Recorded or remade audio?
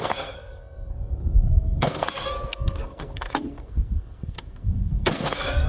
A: remade